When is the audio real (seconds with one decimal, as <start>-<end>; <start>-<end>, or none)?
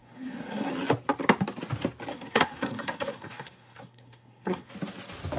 0.7-2.1; 4.7-5.4